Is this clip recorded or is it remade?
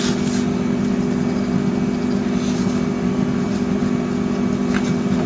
recorded